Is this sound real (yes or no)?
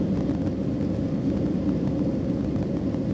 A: yes